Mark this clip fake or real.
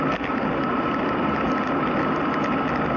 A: real